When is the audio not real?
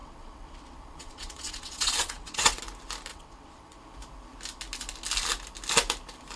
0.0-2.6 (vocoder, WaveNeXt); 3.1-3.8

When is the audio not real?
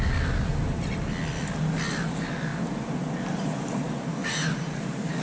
4.2-4.8 (vocoder, Vocos)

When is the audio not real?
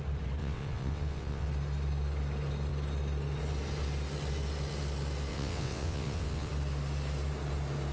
0.4-1.5 (vocoder, WaveNeXt); 5.3-6.5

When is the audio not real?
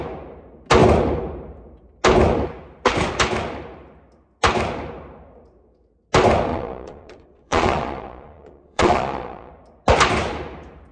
6.5-9.5 (vocoder, Vocos)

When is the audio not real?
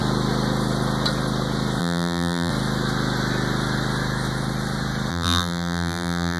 1.8-2.5 (vocoder, BigVGAN v2); 5.1-6.4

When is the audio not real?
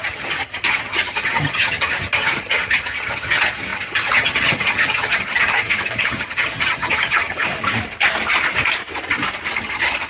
0.0-7.4 (vocoder, HiFi-GAN); 9.6-10.1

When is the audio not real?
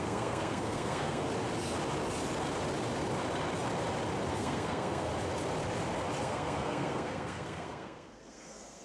0.0-1.2 (codec, SNAC); 4.3-5.1; 6.2-8.8